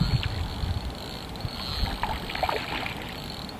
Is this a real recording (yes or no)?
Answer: yes